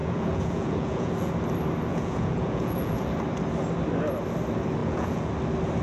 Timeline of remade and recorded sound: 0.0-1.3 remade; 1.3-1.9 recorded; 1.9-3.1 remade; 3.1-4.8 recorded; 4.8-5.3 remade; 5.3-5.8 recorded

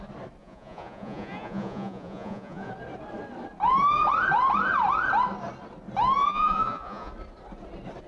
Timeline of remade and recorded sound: 0.0-0.4 recorded; 0.4-2.7 remade; 2.7-6.2 recorded; 6.2-7.1 remade; 7.1-8.1 recorded

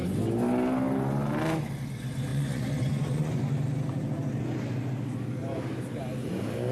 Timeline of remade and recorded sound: 0.0-2.3 recorded; 2.3-3.3 remade; 3.3-6.7 recorded

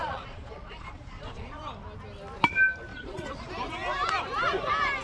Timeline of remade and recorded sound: 0.0-1.6 remade; 1.6-2.9 recorded; 2.9-3.5 remade; 3.5-5.0 recorded

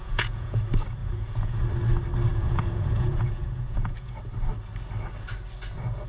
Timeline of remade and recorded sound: 0.0-0.6 remade; 0.6-1.0 recorded; 1.0-1.6 remade; 1.6-2.3 recorded; 2.3-4.2 remade; 4.2-6.1 recorded

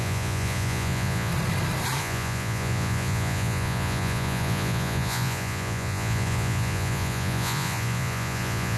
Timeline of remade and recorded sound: 0.0-1.3 remade; 1.3-2.0 recorded; 2.0-8.8 remade

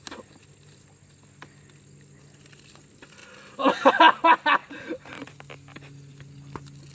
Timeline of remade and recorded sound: 0.0-4.6 recorded; 4.6-5.4 remade; 5.4-6.9 recorded

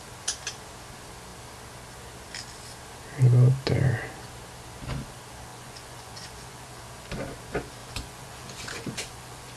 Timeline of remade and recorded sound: 0.0-5.5 recorded; 5.5-6.8 remade; 6.8-7.8 recorded; 7.8-9.6 remade